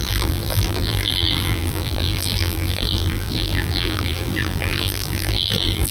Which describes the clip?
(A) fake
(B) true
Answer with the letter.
A